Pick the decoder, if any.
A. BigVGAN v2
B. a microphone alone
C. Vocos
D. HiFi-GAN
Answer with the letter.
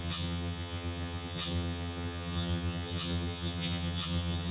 D